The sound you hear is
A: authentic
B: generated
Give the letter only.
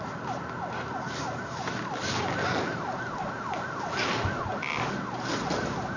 A